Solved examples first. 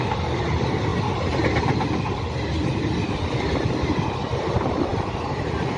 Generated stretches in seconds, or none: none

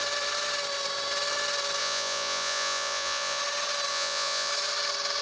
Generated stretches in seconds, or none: 1.8-3.4 (vocoder, Vocos); 3.9-4.5

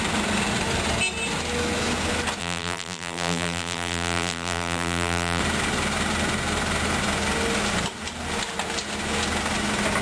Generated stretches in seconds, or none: 2.4-5.4 (vocoder, BigVGAN v2)